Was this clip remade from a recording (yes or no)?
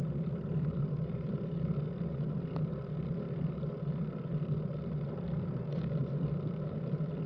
no